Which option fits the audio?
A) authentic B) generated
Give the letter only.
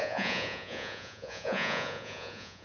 B